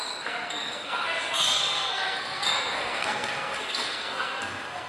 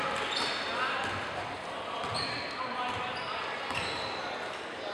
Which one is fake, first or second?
first